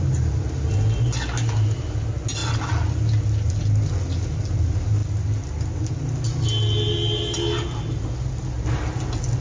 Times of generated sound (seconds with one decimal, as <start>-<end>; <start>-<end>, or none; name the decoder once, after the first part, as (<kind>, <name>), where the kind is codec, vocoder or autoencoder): none